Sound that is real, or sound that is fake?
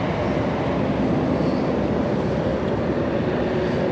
real